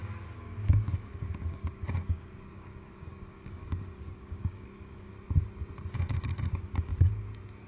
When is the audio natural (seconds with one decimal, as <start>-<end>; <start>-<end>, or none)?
5.1-5.9; 6.9-7.7